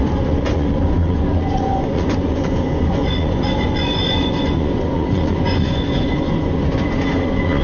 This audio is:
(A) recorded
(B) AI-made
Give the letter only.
B